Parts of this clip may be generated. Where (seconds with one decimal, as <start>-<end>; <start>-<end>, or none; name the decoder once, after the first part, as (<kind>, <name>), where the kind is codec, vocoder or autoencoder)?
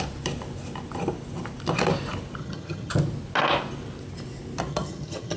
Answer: 2.4-2.9 (vocoder, HiFi-GAN); 4.7-5.4